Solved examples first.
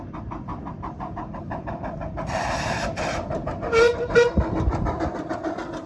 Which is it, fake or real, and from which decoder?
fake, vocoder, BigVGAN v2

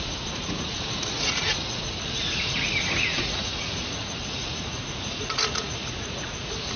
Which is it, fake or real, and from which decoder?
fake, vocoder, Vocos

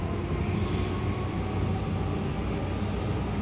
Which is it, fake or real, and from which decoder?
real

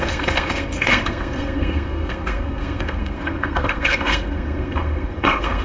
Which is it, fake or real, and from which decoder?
fake, codec, SNAC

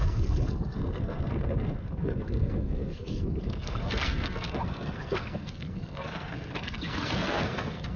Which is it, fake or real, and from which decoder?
fake, codec, SNAC